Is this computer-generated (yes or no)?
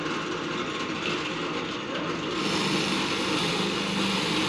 no